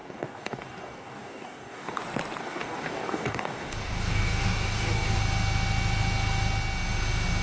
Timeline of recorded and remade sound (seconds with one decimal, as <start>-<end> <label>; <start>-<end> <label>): 0.0-2.0 remade; 2.0-2.4 recorded; 2.4-5.2 remade; 5.2-7.4 recorded